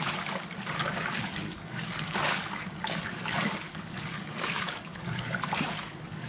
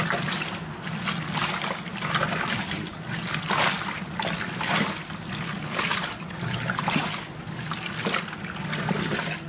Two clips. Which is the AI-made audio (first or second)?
first